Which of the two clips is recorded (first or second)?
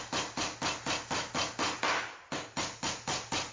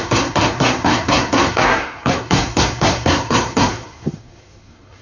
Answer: first